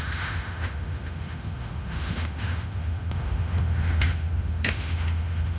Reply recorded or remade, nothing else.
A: remade